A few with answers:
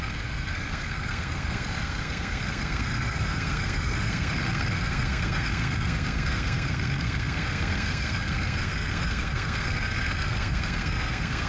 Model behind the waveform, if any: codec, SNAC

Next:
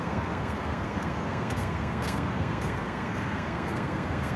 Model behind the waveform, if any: codec, SNAC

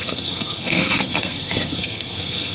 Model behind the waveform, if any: codec, SNAC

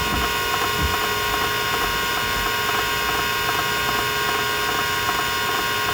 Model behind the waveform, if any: none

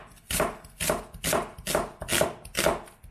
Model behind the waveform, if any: none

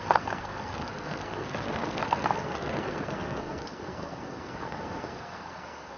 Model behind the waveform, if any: codec, SNAC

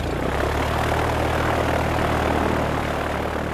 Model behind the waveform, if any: none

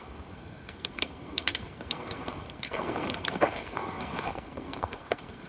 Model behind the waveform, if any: codec, SNAC